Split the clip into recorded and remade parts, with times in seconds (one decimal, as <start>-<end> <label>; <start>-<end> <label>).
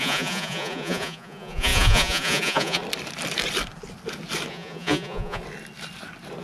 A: 0.0-2.8 remade; 2.8-4.5 recorded; 4.5-5.4 remade; 5.4-6.4 recorded